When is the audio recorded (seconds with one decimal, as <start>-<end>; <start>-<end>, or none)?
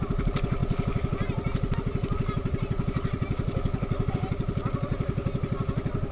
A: 0.0-6.1